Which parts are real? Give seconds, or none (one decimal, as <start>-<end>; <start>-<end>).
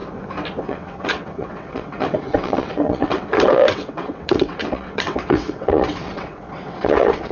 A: 0.0-0.6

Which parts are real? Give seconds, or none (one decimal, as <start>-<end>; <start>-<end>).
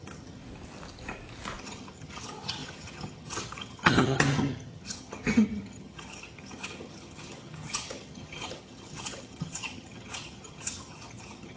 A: 0.4-1.6